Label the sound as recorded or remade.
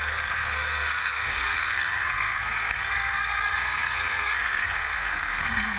remade